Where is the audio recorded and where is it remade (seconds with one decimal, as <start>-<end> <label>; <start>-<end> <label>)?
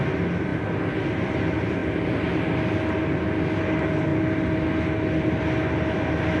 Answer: 0.0-0.5 remade; 0.5-1.0 recorded; 1.0-1.8 remade; 1.8-3.6 recorded; 3.6-4.1 remade; 4.1-5.4 recorded; 5.4-6.4 remade